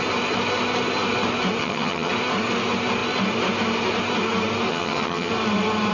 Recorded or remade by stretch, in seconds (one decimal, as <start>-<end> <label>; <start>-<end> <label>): 0.0-1.6 recorded; 1.6-2.1 remade; 2.1-4.7 recorded; 4.7-5.3 remade; 5.3-5.9 recorded